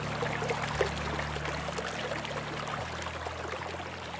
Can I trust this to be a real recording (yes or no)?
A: yes